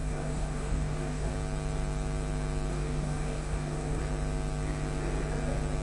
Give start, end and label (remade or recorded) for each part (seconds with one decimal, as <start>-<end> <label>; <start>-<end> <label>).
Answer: 0.0-1.3 remade; 1.3-2.7 recorded; 2.7-4.0 remade; 4.0-5.8 recorded